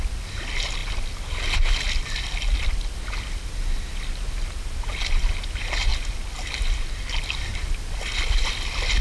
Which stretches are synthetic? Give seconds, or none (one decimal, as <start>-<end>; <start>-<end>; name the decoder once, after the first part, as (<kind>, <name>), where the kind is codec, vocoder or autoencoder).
none